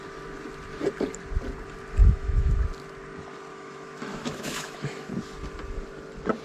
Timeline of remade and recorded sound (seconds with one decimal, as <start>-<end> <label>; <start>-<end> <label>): 0.0-2.0 recorded; 2.0-2.6 remade; 2.6-3.5 recorded; 3.5-5.1 remade; 5.1-6.4 recorded